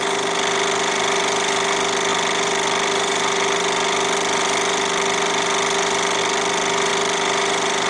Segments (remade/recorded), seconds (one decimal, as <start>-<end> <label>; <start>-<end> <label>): 0.0-7.9 recorded